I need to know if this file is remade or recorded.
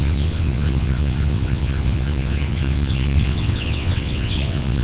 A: remade